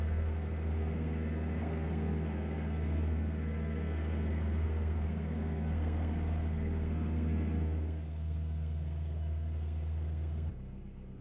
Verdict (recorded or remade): remade